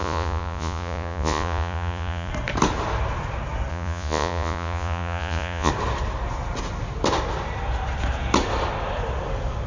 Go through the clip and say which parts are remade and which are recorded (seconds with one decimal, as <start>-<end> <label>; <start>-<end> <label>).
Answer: 0.0-2.3 remade; 2.3-3.7 recorded; 3.7-5.7 remade; 5.7-9.7 recorded